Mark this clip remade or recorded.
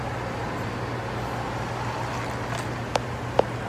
recorded